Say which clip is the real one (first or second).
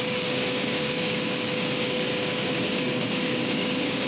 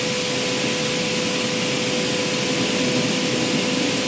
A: second